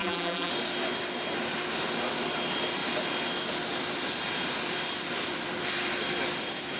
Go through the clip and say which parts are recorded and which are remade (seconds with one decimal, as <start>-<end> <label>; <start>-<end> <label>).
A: 0.0-0.5 remade; 0.5-6.8 recorded